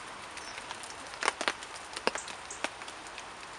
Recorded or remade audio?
recorded